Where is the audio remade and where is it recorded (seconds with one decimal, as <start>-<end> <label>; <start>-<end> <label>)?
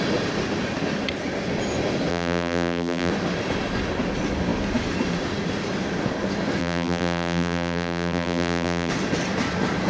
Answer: 0.0-2.1 recorded; 2.1-3.1 remade; 3.1-6.6 recorded; 6.6-8.9 remade; 8.9-9.9 recorded